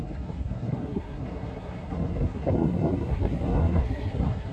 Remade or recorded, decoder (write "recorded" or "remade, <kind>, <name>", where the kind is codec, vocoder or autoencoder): remade, codec, SNAC